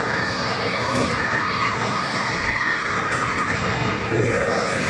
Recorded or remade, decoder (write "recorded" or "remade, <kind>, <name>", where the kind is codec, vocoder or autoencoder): remade, codec, SNAC